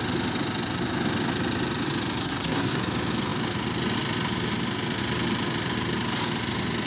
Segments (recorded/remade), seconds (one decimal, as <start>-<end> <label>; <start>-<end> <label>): 0.0-2.2 recorded; 2.2-2.8 remade; 2.8-6.9 recorded